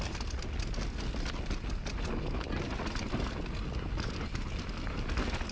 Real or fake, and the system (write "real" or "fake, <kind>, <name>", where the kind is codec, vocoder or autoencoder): real